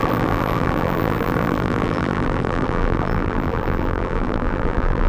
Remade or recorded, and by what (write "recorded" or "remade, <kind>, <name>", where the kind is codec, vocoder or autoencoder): remade, vocoder, BigVGAN v2